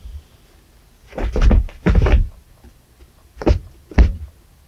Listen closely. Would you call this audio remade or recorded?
recorded